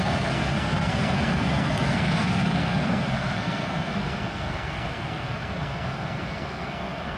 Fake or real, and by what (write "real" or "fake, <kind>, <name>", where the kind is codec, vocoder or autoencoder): fake, codec, SNAC